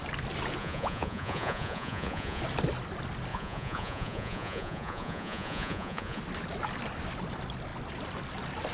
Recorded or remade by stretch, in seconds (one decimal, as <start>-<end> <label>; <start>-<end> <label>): 0.0-0.6 recorded; 0.6-2.4 remade; 2.4-3.3 recorded; 3.3-6.2 remade; 6.2-8.7 recorded